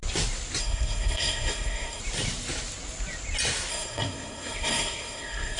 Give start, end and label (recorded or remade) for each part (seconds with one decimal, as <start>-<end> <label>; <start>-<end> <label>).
0.0-0.6 recorded; 0.6-2.0 remade; 2.0-3.7 recorded; 3.7-5.6 remade